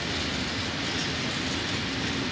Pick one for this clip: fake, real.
real